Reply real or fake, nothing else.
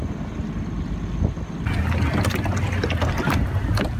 real